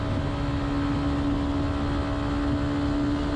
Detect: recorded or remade recorded